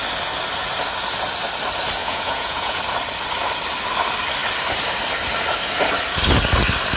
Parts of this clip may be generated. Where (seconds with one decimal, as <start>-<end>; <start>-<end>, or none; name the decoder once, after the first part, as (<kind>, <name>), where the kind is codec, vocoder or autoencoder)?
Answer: 2.0-2.8 (vocoder, Vocos)